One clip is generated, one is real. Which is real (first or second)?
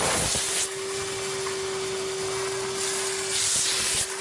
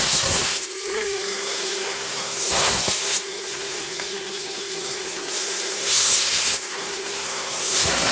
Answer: first